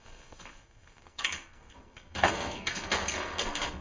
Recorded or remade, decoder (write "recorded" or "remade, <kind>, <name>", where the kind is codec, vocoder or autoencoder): remade, codec, SNAC